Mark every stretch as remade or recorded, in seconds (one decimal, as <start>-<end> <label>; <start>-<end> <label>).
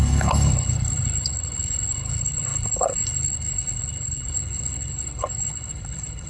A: 0.0-6.3 remade